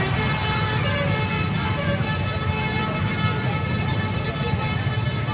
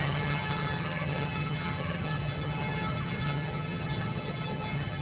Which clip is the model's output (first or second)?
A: second